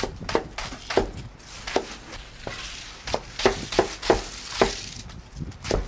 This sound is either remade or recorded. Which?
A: recorded